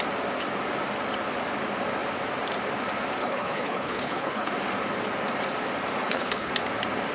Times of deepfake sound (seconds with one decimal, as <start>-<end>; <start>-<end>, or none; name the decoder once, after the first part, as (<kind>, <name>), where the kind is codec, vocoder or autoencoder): 3.2-4.5 (codec, HILCodec); 6.0-6.5